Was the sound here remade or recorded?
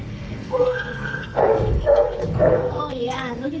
remade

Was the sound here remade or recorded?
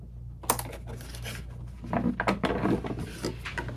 recorded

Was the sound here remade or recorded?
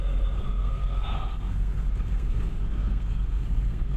remade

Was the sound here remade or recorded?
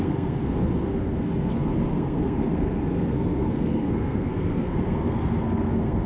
remade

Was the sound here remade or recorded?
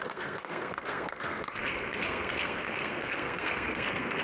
remade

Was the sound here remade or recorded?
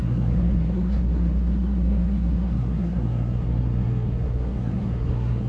remade